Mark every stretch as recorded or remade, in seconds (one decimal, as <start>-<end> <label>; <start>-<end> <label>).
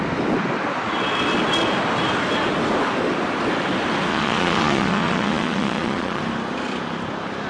0.0-4.1 recorded; 4.1-6.2 remade; 6.2-7.5 recorded